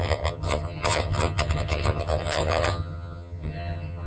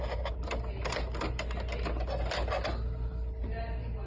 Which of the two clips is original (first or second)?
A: second